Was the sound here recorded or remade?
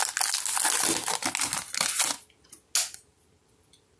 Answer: recorded